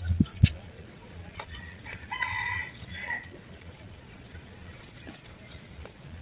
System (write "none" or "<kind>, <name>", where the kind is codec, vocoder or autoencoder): vocoder, Vocos